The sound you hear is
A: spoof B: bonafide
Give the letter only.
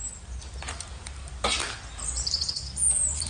A